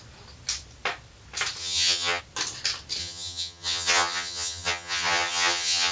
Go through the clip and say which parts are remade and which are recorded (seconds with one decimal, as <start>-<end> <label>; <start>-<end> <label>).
0.0-1.6 recorded; 1.6-2.2 remade; 2.2-3.0 recorded; 3.0-5.9 remade